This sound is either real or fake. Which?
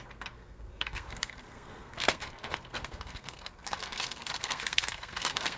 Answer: fake